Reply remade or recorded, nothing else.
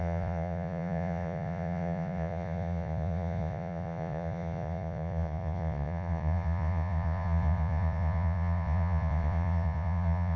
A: remade